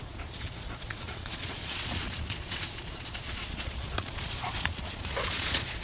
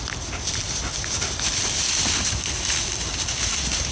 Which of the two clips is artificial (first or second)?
first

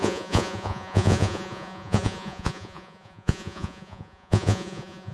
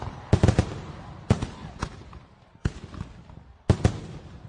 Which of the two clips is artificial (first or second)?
first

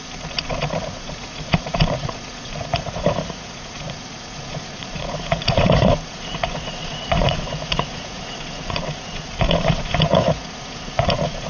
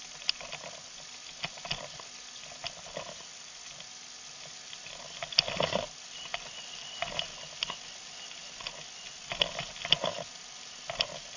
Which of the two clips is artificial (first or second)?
first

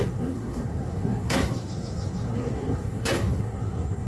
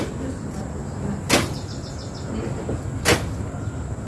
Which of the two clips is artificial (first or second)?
first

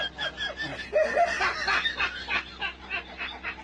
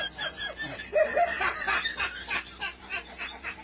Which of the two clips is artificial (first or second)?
second